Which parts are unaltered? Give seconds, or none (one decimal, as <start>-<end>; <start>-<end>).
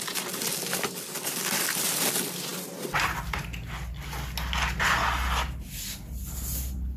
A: 0.0-7.0